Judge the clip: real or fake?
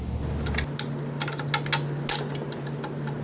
real